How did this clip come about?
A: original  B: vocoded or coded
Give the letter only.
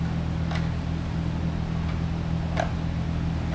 A